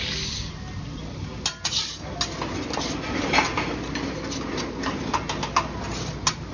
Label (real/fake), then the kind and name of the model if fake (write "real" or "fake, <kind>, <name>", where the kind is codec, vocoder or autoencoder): real